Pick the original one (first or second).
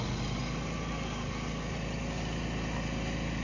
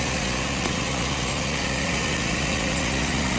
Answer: first